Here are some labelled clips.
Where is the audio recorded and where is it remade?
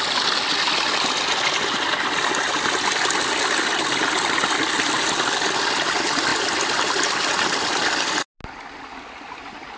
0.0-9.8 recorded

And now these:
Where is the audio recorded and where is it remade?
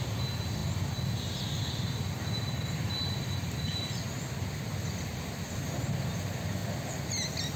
0.0-7.6 recorded